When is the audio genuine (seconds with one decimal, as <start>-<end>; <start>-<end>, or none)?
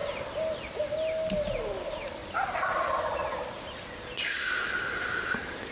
0.0-5.7